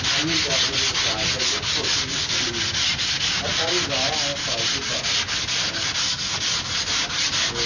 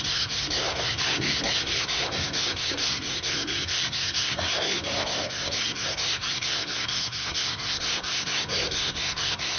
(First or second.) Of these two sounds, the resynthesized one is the second